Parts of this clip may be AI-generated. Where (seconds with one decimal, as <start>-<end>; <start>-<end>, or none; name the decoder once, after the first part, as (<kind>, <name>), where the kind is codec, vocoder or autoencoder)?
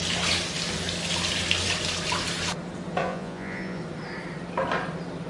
3.0-3.8 (vocoder, Vocos)